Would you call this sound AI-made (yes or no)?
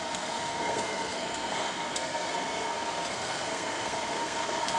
yes